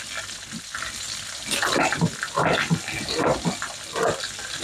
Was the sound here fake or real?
real